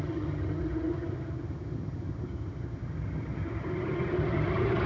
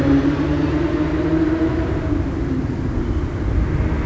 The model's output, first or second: first